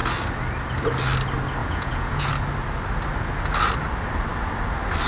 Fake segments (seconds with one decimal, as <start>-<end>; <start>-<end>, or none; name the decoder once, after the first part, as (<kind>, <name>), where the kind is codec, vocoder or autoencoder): 1.6-2.3 (vocoder, Vocos)